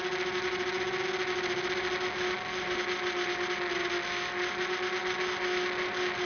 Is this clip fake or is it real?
real